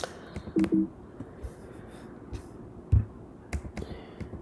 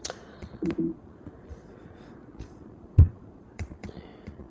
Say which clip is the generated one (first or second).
second